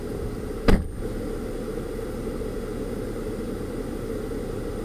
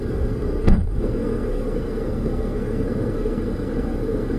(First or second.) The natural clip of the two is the first